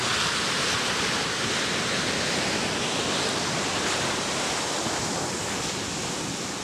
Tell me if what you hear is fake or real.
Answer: real